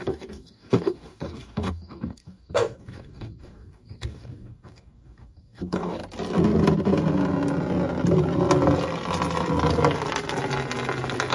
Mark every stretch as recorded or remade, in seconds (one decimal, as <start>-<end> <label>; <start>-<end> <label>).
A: 0.0-6.0 remade; 6.0-11.3 recorded